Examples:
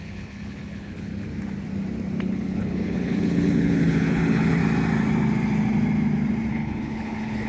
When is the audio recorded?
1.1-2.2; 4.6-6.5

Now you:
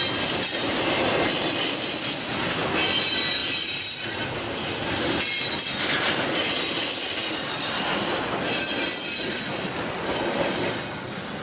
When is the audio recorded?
0.0-11.4

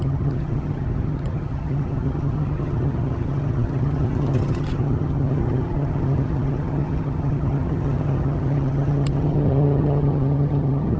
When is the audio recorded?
none

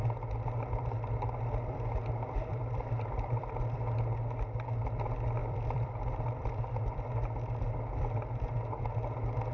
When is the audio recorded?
0.0-2.5; 3.6-5.4; 6.9-9.5

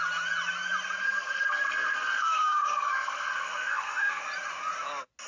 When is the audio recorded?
0.0-1.0; 4.2-5.3

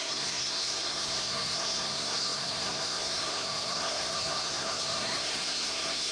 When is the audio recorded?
none